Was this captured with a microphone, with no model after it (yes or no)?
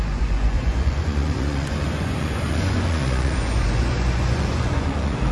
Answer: no